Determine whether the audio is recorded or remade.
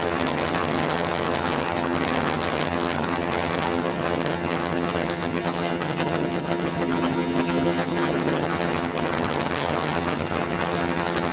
remade